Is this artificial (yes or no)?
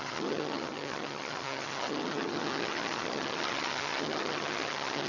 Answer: yes